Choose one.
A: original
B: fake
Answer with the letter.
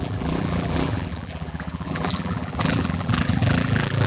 B